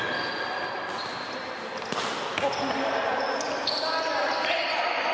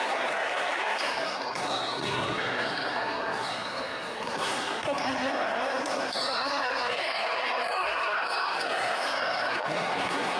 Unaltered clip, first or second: first